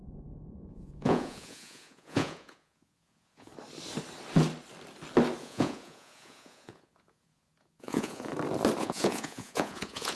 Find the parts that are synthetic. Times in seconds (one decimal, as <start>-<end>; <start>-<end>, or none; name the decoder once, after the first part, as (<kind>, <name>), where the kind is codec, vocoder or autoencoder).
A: 0.0-3.5 (vocoder, Vocos); 5.4-8.3; 8.8-10.2